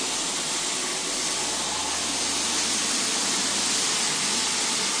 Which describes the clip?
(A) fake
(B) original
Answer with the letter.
B